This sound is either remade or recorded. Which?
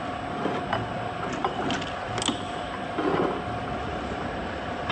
recorded